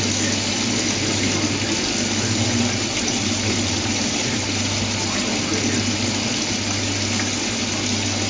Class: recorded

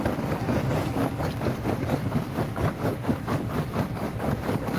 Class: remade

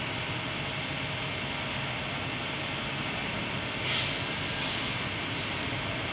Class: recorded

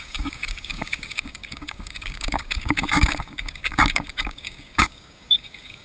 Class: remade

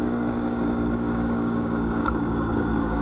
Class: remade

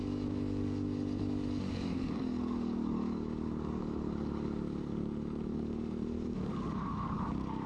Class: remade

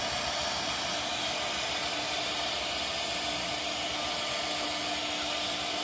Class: recorded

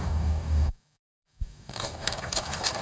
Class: remade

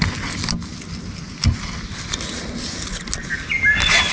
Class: recorded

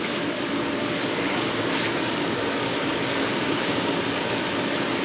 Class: remade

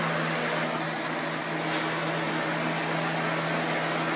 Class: recorded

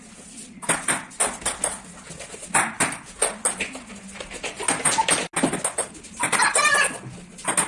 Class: recorded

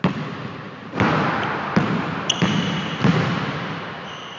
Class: recorded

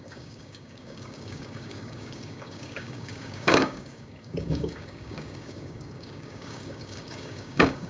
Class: remade